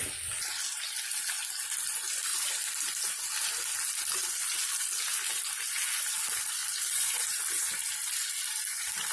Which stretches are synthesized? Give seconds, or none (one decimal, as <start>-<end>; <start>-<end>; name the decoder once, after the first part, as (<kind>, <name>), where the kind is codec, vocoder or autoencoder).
none